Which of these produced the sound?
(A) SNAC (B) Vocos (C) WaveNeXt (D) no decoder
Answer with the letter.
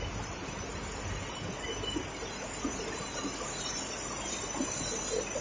D